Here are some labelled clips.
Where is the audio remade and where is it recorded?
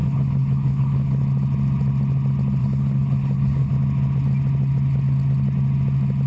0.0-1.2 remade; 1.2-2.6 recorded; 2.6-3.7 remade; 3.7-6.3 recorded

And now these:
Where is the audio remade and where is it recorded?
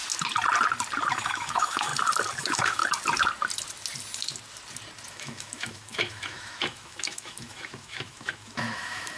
0.0-1.1 recorded; 1.1-1.9 remade; 1.9-2.4 recorded; 2.4-2.8 remade; 2.8-5.1 recorded; 5.1-9.2 remade